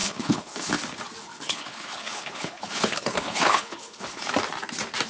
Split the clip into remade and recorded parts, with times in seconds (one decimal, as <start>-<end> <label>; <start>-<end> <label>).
0.0-0.7 remade; 0.7-1.2 recorded; 1.2-4.3 remade; 4.3-5.1 recorded